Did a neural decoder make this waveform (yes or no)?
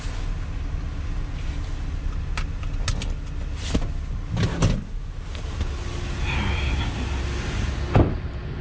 no